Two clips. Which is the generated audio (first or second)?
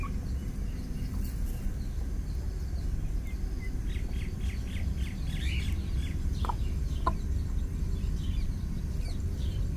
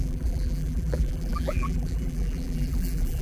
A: second